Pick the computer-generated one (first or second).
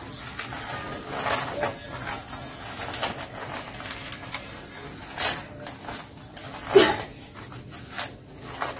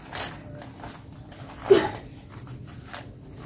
second